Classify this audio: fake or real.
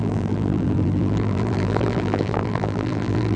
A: fake